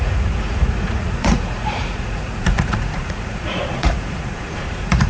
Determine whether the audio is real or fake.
fake